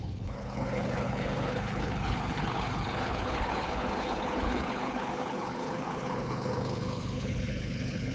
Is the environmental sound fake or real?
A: fake